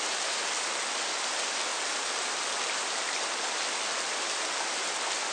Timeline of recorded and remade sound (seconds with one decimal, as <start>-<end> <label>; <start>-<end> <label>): 0.0-5.3 recorded